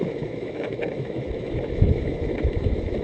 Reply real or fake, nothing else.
fake